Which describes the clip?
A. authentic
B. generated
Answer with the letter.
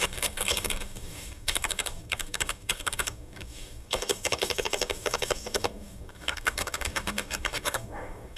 B